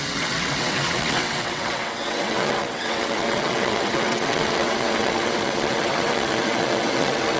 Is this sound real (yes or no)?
no